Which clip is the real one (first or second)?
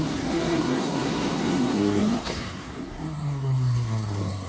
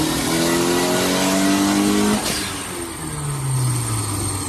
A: second